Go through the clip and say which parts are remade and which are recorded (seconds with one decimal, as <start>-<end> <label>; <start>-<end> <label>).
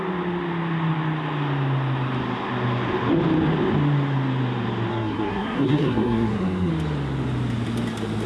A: 0.0-4.9 recorded; 4.9-6.7 remade; 6.7-8.3 recorded